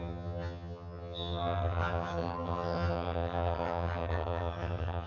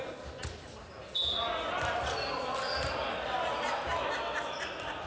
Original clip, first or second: second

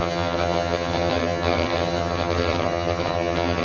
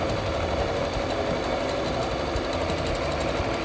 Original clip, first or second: second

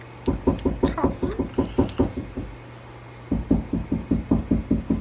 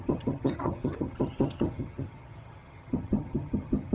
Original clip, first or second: first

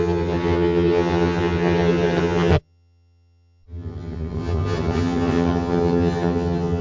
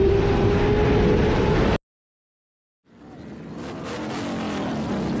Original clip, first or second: second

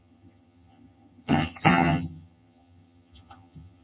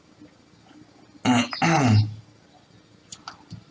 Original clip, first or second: second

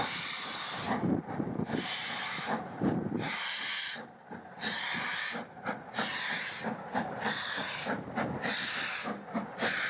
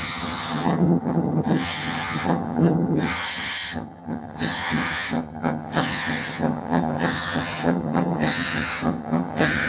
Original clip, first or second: first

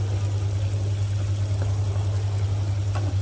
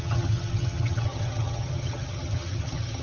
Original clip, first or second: first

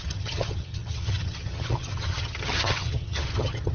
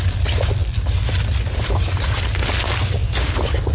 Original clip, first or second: second